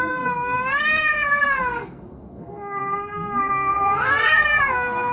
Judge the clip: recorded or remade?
remade